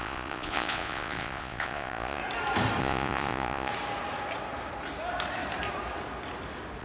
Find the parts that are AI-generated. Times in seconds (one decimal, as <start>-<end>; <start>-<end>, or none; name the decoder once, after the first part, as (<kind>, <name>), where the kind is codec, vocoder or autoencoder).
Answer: 0.0-2.2 (vocoder, Vocos); 2.8-3.7